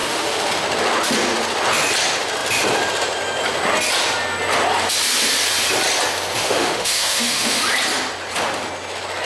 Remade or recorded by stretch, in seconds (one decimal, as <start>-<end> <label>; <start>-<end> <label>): 0.0-0.5 remade; 0.5-6.4 recorded; 6.4-7.6 remade; 7.6-9.3 recorded